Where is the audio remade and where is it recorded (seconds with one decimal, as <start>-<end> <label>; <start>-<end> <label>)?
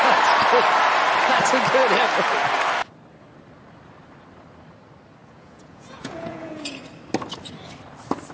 0.0-5.2 recorded; 5.2-6.8 remade; 6.8-8.3 recorded